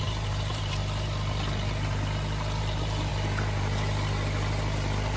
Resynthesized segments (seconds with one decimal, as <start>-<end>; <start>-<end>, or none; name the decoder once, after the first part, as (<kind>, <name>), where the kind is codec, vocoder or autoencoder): 0.0-0.8 (vocoder, BigVGAN v2); 2.6-3.1